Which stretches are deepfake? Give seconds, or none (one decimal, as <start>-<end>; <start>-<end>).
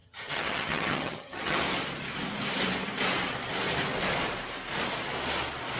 0.0-1.6